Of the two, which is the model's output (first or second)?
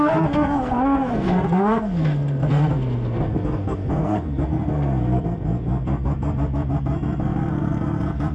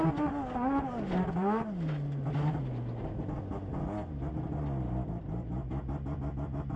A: first